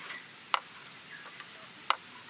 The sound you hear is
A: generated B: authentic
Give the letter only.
B